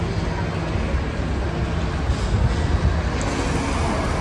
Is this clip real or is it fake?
real